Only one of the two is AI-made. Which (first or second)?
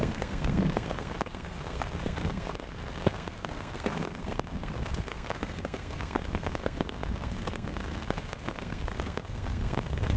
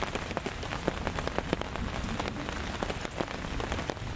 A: first